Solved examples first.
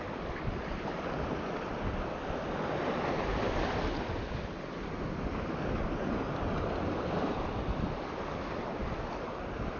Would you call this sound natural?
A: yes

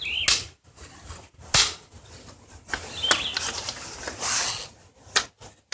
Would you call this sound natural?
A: yes